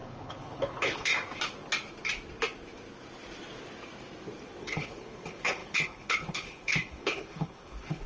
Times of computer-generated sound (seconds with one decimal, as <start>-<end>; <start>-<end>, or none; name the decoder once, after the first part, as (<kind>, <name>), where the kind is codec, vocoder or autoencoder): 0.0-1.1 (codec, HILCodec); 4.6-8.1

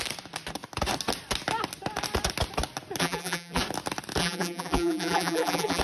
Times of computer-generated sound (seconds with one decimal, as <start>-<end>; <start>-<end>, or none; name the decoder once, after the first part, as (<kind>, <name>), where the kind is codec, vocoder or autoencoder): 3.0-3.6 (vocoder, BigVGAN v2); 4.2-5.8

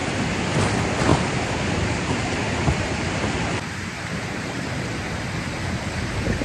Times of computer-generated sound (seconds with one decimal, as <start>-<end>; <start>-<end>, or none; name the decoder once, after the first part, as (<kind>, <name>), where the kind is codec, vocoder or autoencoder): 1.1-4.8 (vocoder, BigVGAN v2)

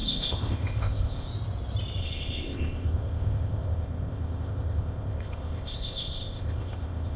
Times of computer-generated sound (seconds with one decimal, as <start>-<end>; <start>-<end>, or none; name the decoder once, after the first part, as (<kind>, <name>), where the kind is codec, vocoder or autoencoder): 0.0-1.3 (codec, ZipCodec); 2.0-7.2